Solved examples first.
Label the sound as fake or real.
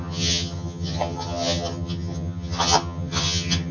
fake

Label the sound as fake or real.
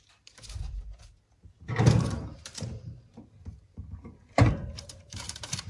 fake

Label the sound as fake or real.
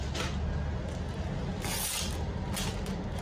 real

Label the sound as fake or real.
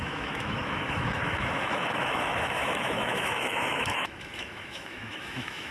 fake